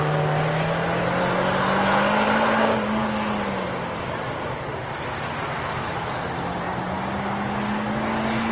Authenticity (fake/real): real